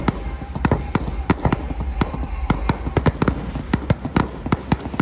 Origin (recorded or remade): recorded